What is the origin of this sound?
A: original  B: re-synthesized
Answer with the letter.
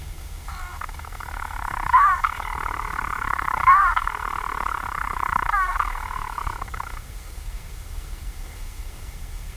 B